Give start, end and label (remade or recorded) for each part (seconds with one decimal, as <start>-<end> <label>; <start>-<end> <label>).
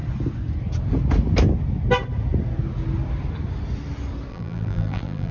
0.0-4.3 recorded; 4.3-5.3 remade